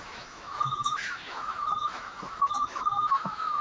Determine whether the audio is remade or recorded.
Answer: remade